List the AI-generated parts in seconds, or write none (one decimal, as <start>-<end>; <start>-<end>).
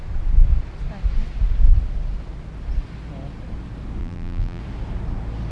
4.0-4.6